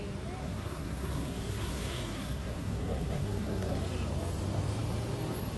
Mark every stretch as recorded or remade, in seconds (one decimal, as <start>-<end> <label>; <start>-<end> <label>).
0.0-0.4 recorded; 0.4-3.8 remade; 3.8-5.6 recorded